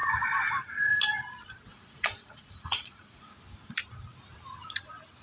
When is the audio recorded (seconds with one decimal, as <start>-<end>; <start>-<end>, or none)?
0.0-1.7; 3.3-5.2